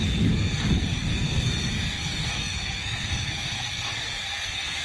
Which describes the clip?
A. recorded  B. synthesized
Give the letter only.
B